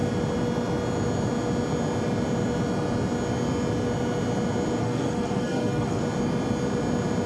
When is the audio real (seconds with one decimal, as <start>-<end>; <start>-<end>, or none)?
0.0-4.8; 6.0-7.3

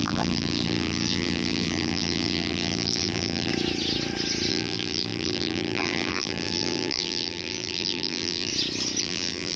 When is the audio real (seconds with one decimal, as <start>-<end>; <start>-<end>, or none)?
3.5-4.5; 8.5-9.0

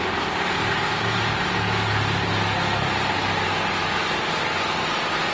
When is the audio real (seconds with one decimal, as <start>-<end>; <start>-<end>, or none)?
0.0-5.3

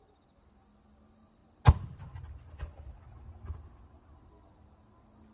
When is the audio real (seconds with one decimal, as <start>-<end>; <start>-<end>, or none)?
0.0-5.3

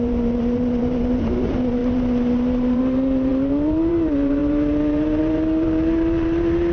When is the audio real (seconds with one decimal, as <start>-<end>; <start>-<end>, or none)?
none

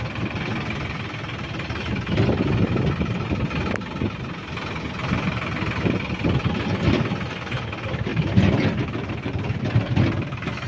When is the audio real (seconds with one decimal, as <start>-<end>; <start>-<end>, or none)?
0.0-10.7

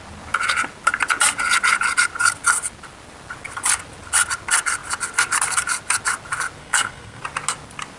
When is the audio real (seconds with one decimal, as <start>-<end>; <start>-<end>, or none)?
0.0-6.6; 7.2-8.0